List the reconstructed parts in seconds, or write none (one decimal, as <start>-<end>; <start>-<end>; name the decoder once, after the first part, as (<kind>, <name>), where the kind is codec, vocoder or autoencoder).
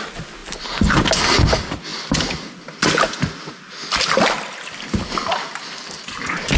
none